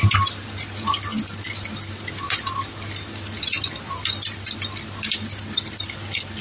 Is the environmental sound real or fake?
real